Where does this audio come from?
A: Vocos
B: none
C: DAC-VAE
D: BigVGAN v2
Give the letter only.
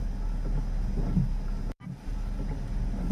B